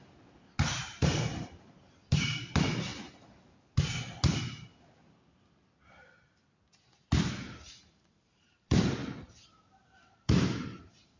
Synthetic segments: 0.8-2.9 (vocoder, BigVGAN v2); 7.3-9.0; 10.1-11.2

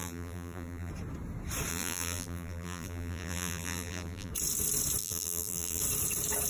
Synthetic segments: 0.0-0.9 (vocoder, BigVGAN v2); 1.7-4.3; 5.0-5.8

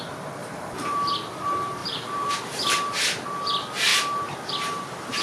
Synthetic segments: 0.4-1.1 (vocoder, BigVGAN v2); 1.8-2.3; 3.9-4.5

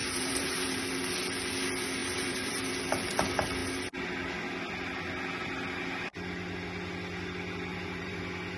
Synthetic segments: 0.0-0.8 (vocoder, BigVGAN v2); 2.0-2.7; 7.7-8.2

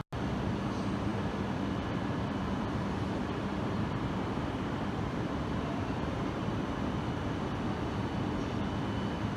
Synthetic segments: 1.1-3.1 (vocoder, BigVGAN v2); 3.5-6.5